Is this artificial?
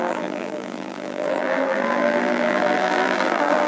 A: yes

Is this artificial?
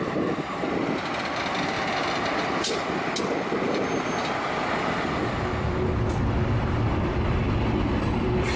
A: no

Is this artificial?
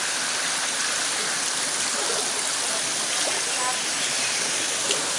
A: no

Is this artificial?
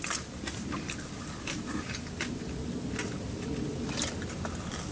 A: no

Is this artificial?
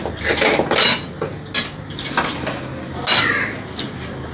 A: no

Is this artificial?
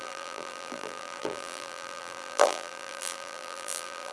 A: yes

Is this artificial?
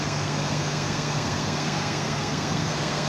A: yes